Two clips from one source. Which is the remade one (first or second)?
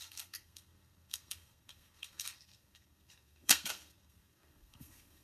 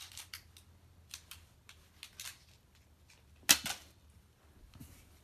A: first